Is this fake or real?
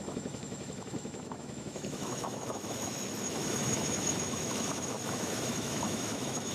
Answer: fake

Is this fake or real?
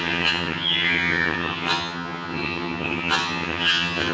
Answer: fake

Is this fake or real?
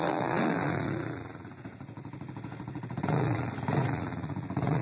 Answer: fake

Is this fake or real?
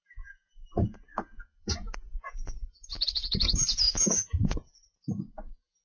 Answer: fake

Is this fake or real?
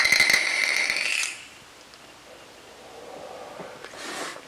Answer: real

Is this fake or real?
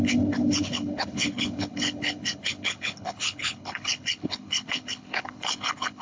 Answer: fake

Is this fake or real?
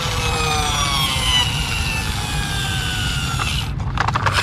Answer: real